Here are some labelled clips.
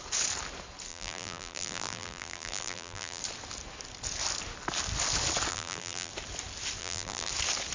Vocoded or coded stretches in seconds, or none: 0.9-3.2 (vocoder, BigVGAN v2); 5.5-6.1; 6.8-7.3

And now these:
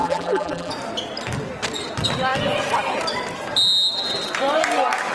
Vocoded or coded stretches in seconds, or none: 0.0-0.7 (vocoder, BigVGAN v2)